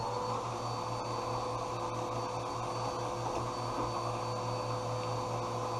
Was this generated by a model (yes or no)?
no